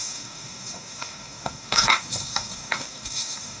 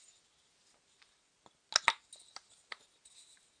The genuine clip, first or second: second